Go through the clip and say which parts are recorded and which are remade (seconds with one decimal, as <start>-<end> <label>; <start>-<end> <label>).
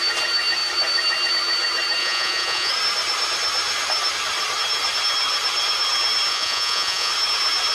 0.0-2.0 recorded; 2.0-2.7 remade; 2.7-6.3 recorded; 6.3-7.1 remade; 7.1-7.7 recorded